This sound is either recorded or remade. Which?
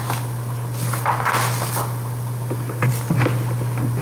recorded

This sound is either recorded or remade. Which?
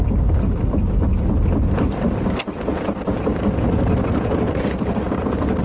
recorded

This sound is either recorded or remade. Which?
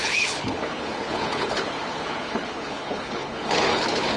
remade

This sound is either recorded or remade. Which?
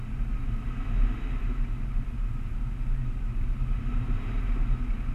recorded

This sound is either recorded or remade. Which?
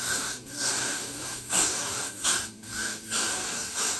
remade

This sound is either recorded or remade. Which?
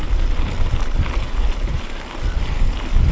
recorded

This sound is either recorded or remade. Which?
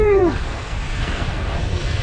remade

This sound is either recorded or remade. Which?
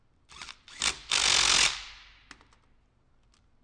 recorded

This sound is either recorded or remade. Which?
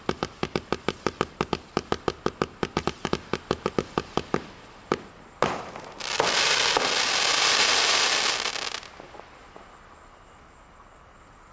recorded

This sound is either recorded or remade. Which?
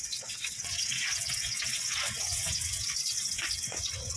remade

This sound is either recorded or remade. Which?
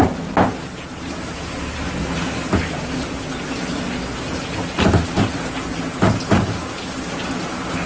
recorded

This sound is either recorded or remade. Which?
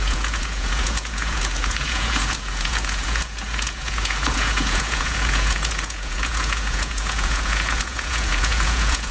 remade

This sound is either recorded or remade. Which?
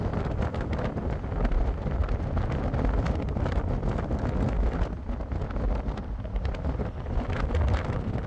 recorded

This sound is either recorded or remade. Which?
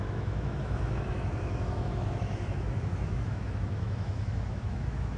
remade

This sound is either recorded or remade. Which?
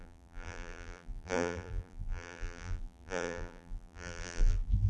remade